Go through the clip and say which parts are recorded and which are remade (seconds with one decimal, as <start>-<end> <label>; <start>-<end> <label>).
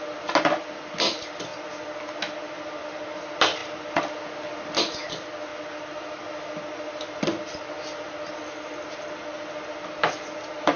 0.0-10.8 recorded